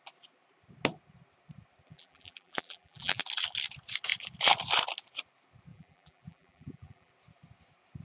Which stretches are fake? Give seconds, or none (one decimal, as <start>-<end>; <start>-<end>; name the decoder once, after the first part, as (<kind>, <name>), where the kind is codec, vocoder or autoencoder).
1.9-3.2 (vocoder, BigVGAN v2); 5.7-7.1